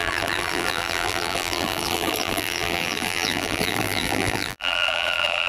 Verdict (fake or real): fake